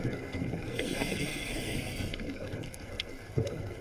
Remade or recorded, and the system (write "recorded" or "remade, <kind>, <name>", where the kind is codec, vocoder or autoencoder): remade, codec, SNAC